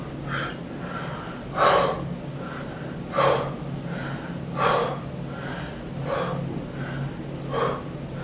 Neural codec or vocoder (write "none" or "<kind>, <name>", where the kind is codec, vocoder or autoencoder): none